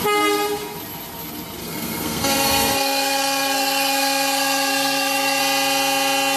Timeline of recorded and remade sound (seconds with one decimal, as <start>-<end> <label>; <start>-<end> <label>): 0.0-1.6 recorded; 1.6-5.4 remade; 5.4-6.4 recorded